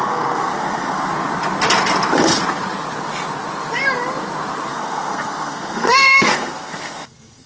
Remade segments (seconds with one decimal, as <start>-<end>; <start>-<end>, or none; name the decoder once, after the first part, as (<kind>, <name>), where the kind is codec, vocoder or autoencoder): 0.0-1.1 (codec, SNAC); 4.7-7.5